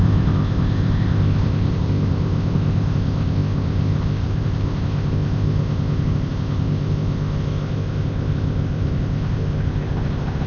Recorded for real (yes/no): no